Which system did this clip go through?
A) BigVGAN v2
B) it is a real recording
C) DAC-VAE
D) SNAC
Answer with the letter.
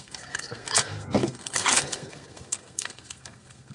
D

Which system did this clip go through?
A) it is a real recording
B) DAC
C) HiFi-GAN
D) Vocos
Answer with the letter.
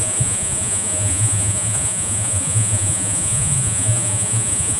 D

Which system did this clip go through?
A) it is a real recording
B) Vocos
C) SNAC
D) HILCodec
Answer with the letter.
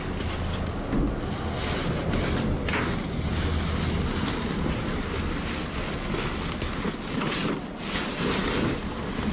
A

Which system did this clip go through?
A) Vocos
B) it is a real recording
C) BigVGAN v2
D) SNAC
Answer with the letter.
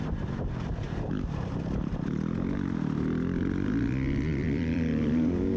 C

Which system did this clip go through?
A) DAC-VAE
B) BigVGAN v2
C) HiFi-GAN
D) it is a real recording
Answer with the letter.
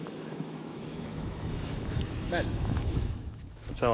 A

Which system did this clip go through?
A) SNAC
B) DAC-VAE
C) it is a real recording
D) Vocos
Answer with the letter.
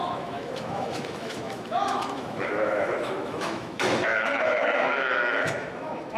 B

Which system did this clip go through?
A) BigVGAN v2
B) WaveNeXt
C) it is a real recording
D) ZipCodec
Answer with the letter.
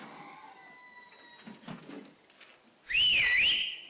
C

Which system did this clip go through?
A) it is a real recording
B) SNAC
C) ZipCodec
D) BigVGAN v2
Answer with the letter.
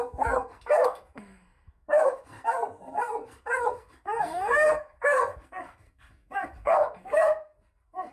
B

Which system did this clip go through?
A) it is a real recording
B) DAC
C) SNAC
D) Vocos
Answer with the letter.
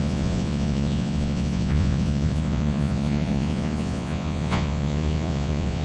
D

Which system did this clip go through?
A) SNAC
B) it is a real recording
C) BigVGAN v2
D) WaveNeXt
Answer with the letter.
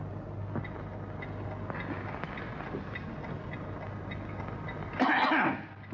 B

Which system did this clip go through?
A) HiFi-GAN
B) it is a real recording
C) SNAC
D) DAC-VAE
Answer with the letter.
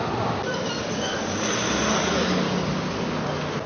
B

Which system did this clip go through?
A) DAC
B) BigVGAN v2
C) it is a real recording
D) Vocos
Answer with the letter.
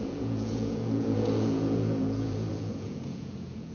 D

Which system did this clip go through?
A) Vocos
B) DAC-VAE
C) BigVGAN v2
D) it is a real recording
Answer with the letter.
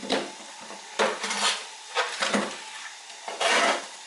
C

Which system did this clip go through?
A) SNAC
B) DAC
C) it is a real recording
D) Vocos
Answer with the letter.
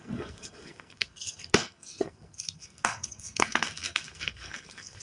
A